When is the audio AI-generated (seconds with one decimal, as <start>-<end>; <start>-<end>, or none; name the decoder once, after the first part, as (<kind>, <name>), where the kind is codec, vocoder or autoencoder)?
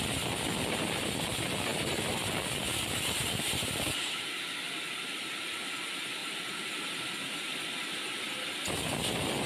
1.7-2.3 (vocoder, BigVGAN v2); 2.7-4.2; 6.2-7.1